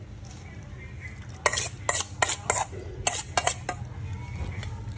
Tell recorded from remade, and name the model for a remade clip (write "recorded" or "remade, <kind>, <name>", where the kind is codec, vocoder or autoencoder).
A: recorded